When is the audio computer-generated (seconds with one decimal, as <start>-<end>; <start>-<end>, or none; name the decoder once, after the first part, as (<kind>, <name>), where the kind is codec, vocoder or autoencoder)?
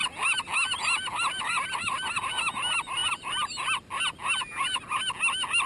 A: none